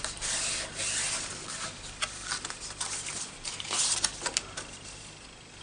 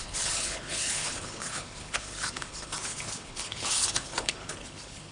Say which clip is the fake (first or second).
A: second